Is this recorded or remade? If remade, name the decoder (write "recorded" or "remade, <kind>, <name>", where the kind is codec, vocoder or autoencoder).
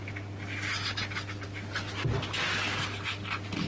recorded